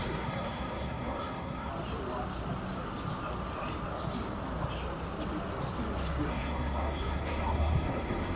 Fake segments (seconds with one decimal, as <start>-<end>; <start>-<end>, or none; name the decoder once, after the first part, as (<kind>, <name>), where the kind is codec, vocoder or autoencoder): 0.0-1.7 (codec, SNAC); 6.3-8.4